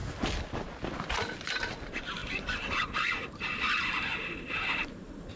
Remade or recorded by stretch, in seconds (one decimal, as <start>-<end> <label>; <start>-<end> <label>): 0.0-5.4 recorded